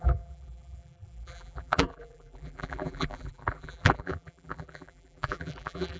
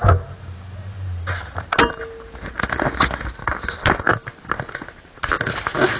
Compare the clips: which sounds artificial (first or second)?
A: first